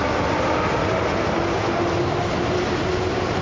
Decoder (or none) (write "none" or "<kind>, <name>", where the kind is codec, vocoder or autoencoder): none